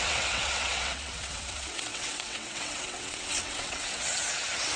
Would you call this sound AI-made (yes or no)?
yes